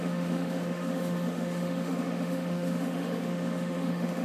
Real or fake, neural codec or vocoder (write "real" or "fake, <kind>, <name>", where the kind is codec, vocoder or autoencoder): fake, autoencoder, DAC-VAE